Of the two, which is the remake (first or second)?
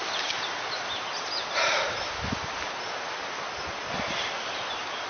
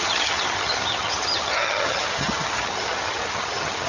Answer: second